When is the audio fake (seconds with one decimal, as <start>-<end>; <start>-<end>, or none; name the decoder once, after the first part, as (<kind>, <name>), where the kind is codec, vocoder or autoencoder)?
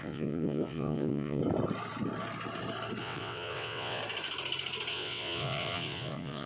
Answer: 0.0-1.4 (vocoder, WaveNeXt); 3.0-4.0; 4.9-6.5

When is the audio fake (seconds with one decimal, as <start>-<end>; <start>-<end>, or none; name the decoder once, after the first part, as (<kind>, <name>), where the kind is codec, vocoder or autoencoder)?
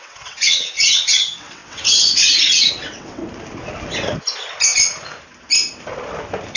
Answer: 0.0-3.2 (vocoder, WaveNeXt)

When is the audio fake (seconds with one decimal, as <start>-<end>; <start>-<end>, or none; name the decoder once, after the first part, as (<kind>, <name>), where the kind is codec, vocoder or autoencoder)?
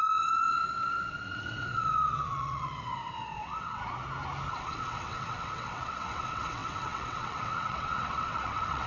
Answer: 0.0-3.8 (vocoder, WaveNeXt); 4.5-8.9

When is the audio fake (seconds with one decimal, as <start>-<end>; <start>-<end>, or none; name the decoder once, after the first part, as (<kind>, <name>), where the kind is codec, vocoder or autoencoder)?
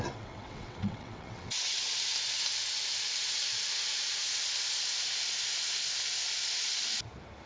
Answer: 0.0-1.9 (vocoder, WaveNeXt)